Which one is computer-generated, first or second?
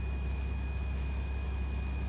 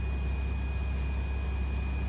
first